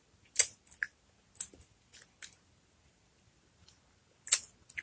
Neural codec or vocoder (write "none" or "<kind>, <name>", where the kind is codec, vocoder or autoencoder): none